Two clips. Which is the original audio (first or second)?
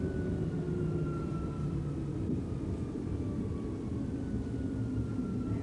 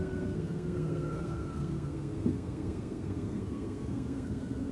first